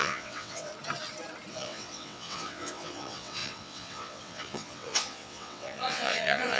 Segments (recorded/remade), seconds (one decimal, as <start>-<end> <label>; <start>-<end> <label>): 0.0-0.7 remade; 0.7-1.5 recorded; 1.5-6.6 remade